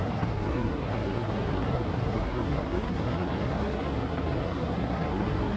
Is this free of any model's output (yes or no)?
no